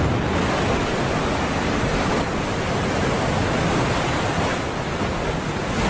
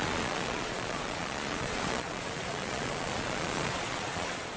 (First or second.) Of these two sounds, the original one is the first